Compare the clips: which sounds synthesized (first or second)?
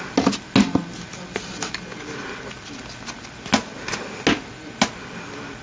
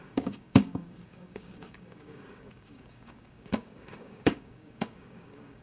second